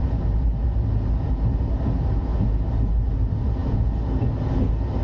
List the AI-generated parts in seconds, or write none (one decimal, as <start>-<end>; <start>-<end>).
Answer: none